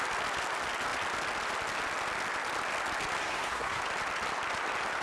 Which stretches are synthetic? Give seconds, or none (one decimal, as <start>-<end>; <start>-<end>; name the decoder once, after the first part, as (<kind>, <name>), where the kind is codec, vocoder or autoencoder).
3.2-3.8 (codec, SNAC)